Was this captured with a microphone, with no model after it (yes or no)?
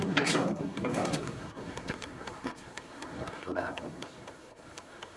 no